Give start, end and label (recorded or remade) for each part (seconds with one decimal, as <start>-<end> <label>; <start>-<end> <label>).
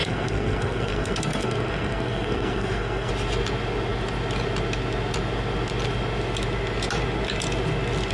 0.0-3.1 remade; 3.1-8.1 recorded